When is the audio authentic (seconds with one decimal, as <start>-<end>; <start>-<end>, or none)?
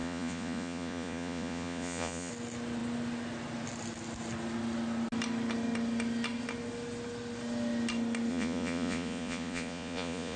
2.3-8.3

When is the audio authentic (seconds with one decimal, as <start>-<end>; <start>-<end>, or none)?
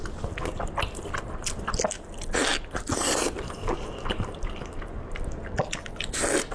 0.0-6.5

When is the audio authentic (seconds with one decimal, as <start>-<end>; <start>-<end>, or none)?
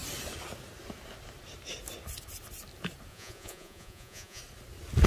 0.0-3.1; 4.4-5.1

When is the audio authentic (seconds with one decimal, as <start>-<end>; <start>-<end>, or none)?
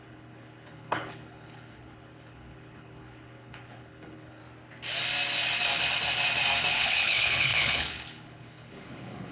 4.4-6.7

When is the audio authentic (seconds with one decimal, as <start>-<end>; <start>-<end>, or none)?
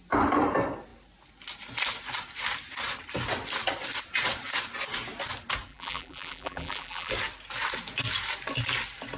0.0-5.7; 7.1-9.2